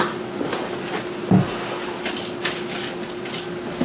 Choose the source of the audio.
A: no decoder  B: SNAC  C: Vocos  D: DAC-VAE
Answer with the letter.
A